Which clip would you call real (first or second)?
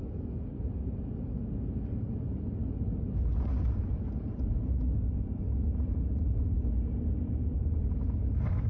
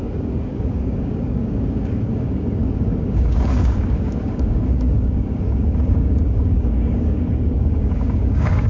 first